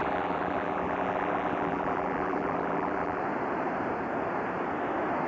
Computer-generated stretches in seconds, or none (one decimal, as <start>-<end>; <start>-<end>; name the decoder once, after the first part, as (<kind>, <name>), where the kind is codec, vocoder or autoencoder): 0.0-3.2 (vocoder, BigVGAN v2)